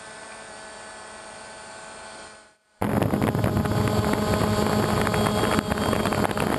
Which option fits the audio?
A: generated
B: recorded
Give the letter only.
B